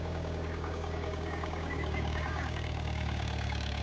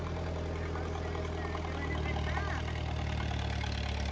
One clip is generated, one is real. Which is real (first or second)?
second